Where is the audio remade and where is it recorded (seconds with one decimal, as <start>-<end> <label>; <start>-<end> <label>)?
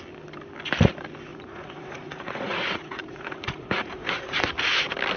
0.0-1.3 recorded; 1.3-4.4 remade; 4.4-5.2 recorded